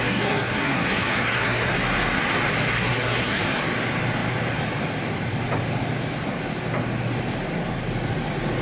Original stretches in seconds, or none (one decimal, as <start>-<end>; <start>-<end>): 1.7-2.7; 3.4-8.6